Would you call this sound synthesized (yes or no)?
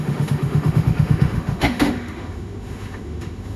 yes